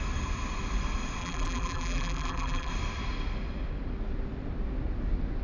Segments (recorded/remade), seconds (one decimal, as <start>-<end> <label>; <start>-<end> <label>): 0.0-1.2 recorded; 1.2-2.7 remade; 2.7-5.4 recorded